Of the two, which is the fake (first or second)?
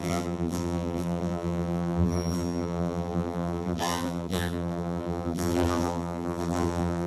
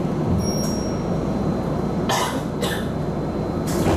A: first